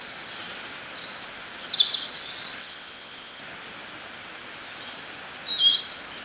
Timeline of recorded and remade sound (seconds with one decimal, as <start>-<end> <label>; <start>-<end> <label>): 0.0-2.6 recorded; 2.6-3.4 remade; 3.4-6.2 recorded